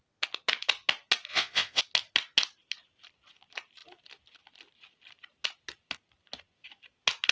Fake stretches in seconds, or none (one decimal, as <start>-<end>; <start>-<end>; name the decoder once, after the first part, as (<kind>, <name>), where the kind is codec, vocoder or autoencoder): 1.3-1.8 (vocoder, Vocos)